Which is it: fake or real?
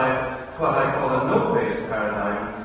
real